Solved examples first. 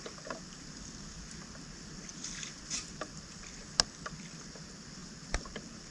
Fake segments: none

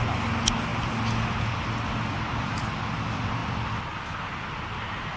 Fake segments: none

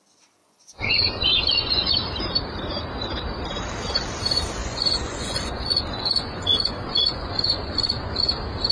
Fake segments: 0.4-1.9; 4.6-8.2

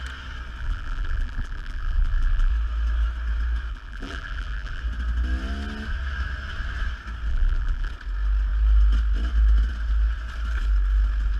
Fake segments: 0.6-2.5; 3.7-4.8; 7.3-7.9